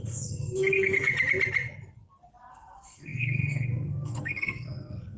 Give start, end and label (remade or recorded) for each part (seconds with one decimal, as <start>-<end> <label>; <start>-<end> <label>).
0.0-1.1 remade; 1.1-2.5 recorded; 2.5-5.2 remade